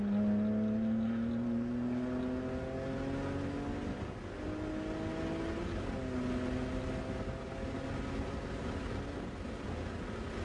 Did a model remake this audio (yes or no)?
no